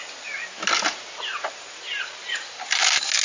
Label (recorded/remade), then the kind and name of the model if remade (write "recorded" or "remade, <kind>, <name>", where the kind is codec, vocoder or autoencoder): recorded